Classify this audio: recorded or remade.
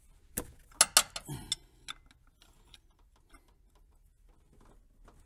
recorded